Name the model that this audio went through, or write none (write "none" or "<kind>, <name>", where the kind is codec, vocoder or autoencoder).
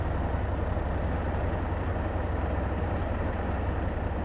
none